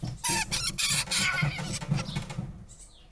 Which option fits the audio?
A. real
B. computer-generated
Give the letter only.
A